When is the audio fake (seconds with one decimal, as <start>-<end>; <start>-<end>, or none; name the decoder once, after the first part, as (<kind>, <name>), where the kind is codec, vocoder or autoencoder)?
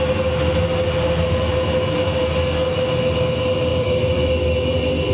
3.7-4.3 (vocoder, BigVGAN v2)